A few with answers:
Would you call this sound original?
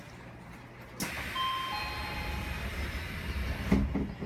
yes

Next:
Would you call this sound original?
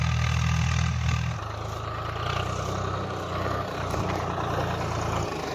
yes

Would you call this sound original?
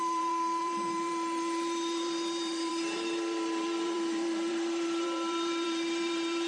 no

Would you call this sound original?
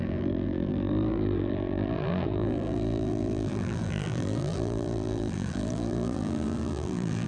no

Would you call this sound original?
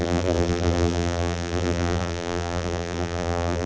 no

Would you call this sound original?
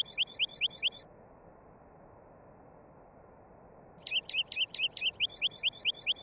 yes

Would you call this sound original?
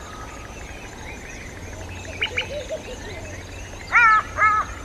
yes